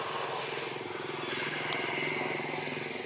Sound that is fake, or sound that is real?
real